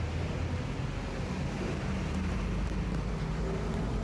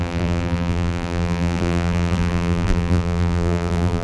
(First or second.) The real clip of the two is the first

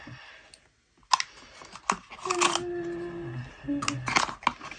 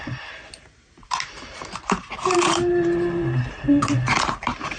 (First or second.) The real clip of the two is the first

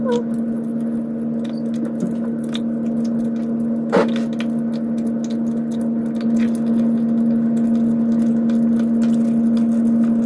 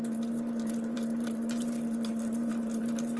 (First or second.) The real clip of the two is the first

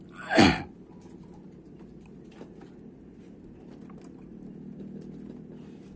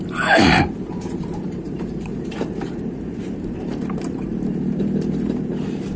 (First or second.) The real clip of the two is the first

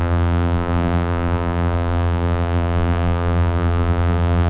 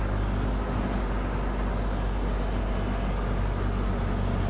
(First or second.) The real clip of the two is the second